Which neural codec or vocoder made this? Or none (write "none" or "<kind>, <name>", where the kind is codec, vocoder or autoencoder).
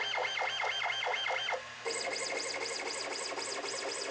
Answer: none